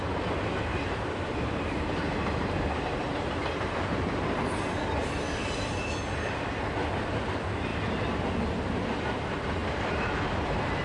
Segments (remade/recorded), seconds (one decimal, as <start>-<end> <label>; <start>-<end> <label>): 0.0-0.7 recorded; 0.7-4.6 remade; 4.6-10.8 recorded